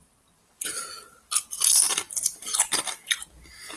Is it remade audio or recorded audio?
remade